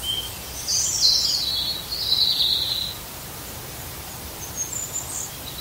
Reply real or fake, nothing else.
real